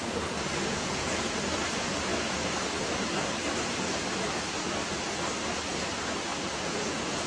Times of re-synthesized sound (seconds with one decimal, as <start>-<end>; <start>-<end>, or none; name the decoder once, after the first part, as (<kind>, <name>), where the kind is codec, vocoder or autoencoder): 0.6-1.3 (vocoder, Vocos); 6.3-7.3